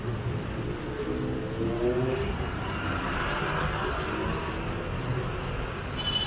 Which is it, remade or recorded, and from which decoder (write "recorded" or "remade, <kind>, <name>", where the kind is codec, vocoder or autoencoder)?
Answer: recorded